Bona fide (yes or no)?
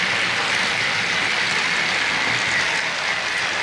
yes